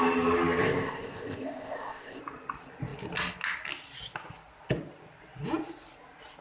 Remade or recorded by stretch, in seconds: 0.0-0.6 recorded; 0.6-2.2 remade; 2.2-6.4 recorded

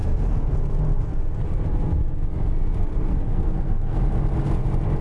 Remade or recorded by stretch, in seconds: 0.0-2.8 recorded; 2.8-4.0 remade; 4.0-5.0 recorded

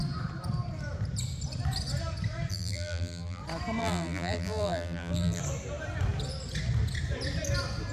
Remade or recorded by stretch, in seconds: 0.0-2.5 recorded; 2.5-3.4 remade; 3.4-3.8 recorded; 3.8-5.4 remade; 5.4-7.9 recorded

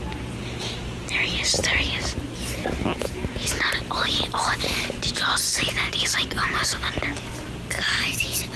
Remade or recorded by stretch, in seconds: 0.0-8.6 recorded

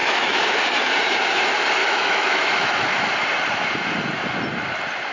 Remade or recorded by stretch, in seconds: 0.0-0.6 remade; 0.6-1.8 recorded; 1.8-3.0 remade; 3.0-5.1 recorded

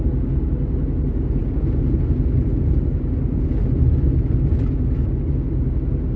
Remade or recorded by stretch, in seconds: 0.0-6.2 recorded